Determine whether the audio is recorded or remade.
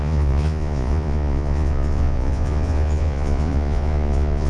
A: remade